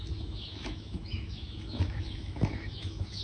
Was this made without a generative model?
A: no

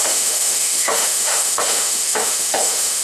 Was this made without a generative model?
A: no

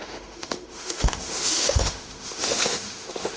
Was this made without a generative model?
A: no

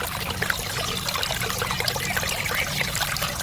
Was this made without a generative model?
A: yes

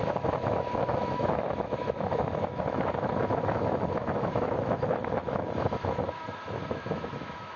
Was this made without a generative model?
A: no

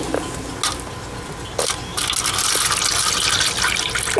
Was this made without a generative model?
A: yes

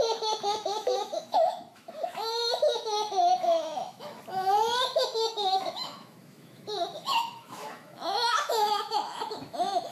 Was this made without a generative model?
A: no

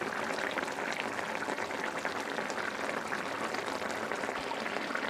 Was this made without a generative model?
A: yes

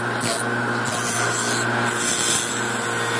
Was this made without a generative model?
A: yes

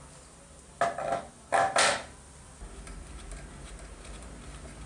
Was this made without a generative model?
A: yes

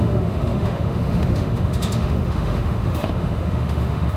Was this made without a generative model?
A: no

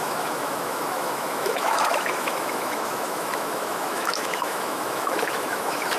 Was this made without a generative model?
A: no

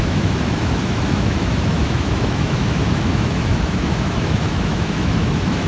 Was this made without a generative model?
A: no